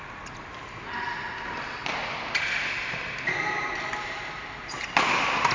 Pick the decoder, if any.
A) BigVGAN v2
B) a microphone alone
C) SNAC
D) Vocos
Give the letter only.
B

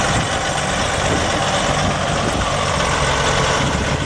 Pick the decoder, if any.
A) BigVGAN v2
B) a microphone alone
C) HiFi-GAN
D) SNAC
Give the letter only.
B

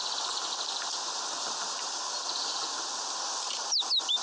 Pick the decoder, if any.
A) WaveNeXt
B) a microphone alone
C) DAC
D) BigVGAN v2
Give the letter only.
D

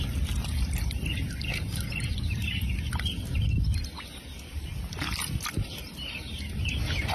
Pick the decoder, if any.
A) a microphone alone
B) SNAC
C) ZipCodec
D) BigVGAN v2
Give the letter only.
D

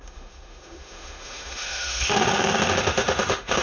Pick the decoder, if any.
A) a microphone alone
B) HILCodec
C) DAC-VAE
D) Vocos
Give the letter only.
C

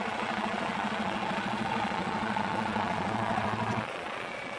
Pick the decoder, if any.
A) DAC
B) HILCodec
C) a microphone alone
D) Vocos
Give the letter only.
D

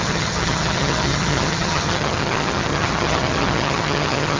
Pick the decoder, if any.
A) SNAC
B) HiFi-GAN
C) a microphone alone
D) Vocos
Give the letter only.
B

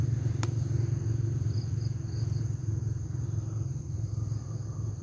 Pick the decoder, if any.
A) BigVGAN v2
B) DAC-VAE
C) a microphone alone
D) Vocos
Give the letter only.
C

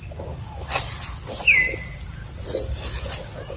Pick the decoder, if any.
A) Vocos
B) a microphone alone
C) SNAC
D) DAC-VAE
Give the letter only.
B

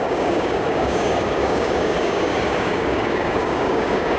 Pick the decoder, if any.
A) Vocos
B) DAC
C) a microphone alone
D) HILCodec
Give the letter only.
B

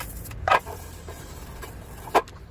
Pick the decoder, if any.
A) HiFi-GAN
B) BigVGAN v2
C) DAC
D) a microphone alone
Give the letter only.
B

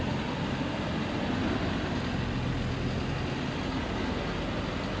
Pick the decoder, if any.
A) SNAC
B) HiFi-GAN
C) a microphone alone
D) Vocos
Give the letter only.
C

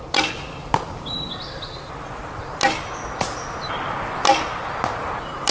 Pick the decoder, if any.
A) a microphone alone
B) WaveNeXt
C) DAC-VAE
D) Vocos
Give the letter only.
A